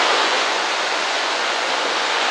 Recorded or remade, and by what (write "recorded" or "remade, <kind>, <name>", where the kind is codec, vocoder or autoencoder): remade, vocoder, Vocos